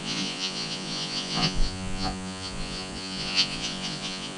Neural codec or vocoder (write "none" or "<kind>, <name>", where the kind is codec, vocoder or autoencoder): vocoder, Vocos